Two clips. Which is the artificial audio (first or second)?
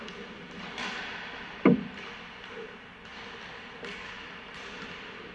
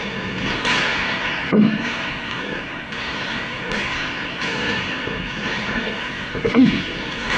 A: second